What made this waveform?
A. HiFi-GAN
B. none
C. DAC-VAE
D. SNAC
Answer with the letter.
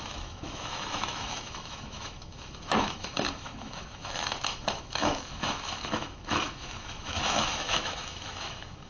C